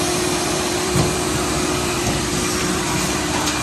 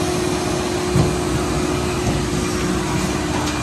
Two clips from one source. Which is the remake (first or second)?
first